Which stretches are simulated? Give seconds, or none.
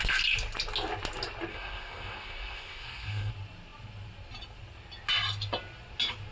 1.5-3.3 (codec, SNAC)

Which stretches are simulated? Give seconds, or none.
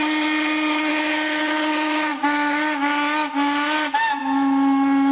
none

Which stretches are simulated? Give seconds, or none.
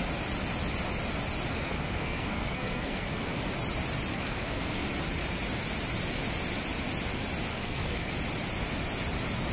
1.5-3.4 (codec, SNAC); 4.1-4.9; 7.5-8.1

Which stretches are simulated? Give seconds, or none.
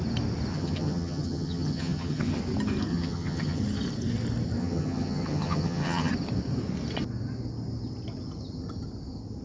0.5-2.4 (vocoder, HiFi-GAN); 2.9-3.6; 4.6-6.1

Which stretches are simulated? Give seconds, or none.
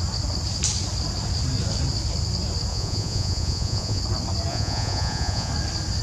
2.7-4.0 (vocoder, Vocos); 4.5-5.5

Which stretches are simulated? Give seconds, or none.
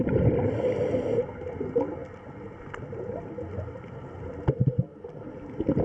none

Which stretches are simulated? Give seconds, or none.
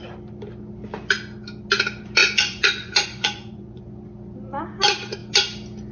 2.2-3.8 (vocoder, Vocos)